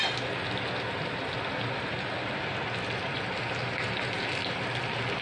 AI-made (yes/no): no